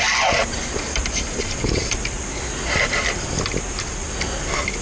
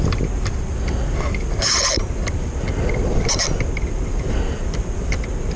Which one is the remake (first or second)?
second